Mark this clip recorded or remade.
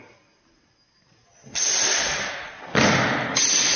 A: recorded